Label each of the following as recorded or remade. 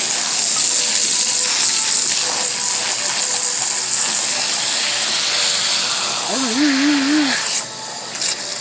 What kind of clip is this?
recorded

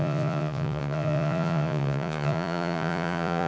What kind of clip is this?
remade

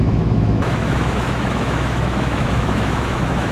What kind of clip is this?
remade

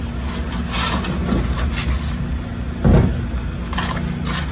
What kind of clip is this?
recorded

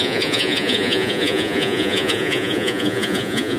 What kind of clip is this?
remade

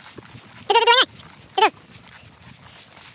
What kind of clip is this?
recorded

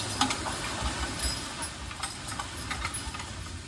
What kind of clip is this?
recorded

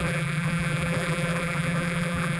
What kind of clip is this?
remade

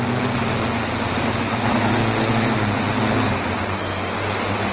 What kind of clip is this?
recorded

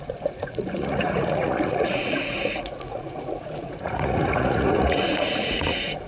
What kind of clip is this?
remade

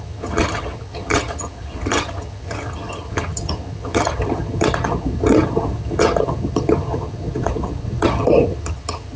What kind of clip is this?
remade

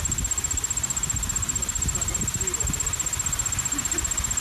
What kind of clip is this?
recorded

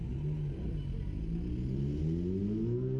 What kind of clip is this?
recorded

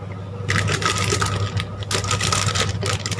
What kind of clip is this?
recorded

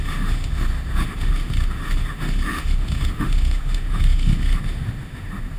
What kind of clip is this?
remade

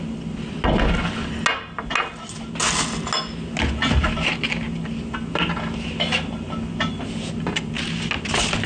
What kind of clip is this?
recorded